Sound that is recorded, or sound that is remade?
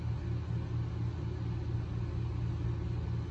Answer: recorded